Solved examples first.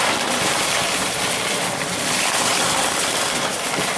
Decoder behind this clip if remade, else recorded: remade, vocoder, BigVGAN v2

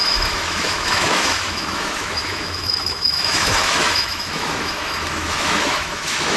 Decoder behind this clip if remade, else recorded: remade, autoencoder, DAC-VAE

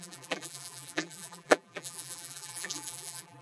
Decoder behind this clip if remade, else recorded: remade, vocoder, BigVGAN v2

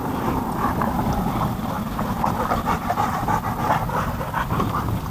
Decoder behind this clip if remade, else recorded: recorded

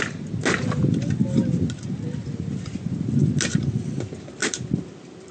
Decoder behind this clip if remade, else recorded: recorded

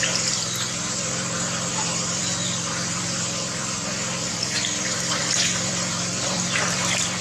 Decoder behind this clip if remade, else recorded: remade, vocoder, BigVGAN v2